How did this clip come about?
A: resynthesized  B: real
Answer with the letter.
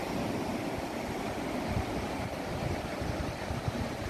B